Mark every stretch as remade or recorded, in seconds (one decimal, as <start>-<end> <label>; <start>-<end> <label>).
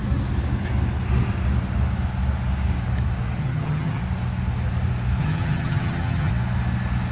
0.0-3.4 recorded; 3.4-4.0 remade; 4.0-5.2 recorded; 5.2-6.3 remade; 6.3-7.1 recorded